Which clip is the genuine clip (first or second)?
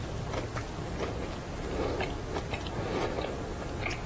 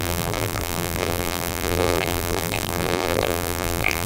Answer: first